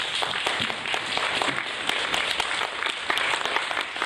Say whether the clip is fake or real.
real